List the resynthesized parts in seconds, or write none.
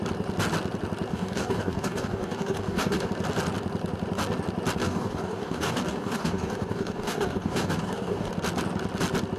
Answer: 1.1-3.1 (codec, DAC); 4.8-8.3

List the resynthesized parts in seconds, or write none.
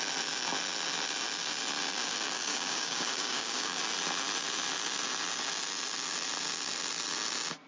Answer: 2.5-3.8 (codec, DAC)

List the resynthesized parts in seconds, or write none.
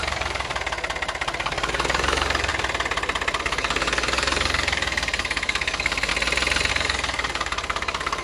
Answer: 0.0-0.5 (codec, DAC); 1.4-2.5; 3.4-6.1; 6.7-8.2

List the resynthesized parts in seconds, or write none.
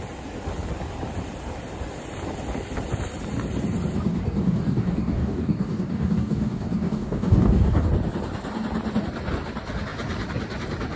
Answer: 4.1-7.9 (codec, DAC)